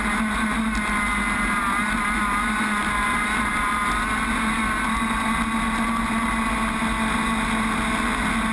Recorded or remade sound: recorded